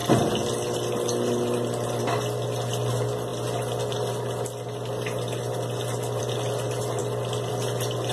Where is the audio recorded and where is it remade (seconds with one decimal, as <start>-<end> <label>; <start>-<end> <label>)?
0.0-8.1 recorded